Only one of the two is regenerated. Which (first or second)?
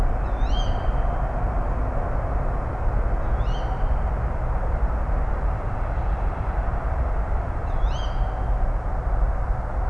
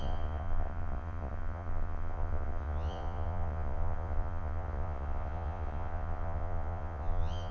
second